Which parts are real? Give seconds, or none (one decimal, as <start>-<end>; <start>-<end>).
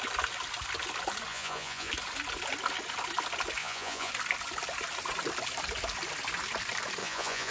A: 0.0-1.3; 1.9-3.6; 4.1-7.0